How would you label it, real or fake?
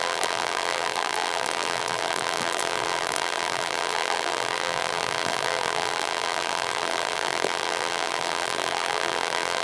fake